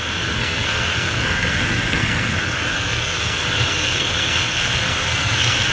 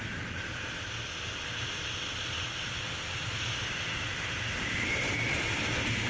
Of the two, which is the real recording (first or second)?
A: second